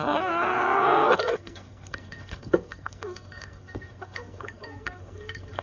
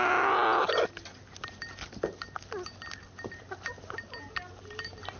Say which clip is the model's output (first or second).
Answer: first